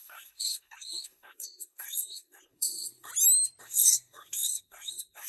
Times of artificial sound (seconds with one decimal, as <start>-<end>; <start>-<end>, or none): 0.0-3.1; 3.6-5.3